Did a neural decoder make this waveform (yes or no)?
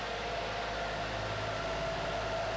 no